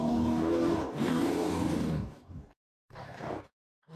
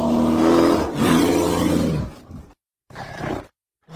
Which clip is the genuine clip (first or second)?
second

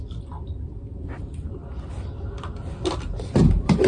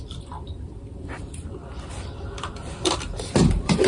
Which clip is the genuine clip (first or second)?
first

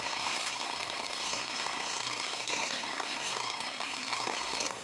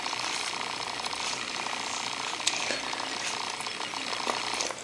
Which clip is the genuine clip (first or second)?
second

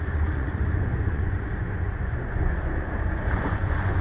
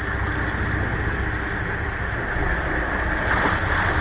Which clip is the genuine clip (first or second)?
second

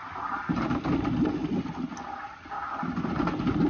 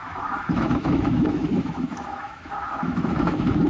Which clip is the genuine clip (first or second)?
first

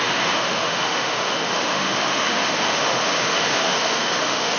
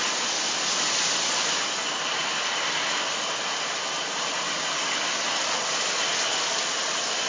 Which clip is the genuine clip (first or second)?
second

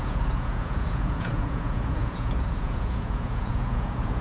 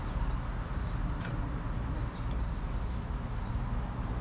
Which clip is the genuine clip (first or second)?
second